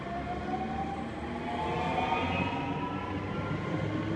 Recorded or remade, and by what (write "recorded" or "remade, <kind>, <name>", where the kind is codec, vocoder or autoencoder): recorded